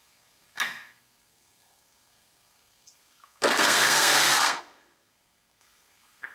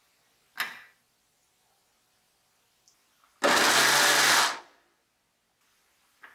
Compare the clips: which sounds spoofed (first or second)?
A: first